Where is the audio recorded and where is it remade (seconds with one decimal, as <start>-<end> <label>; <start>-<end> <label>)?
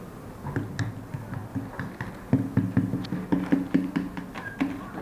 0.0-5.0 recorded